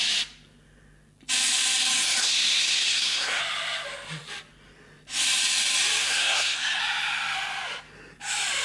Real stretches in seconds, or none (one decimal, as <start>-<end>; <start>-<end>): 0.0-2.2; 3.4-6.0; 6.8-8.6